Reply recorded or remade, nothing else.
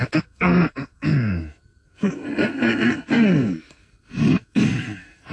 remade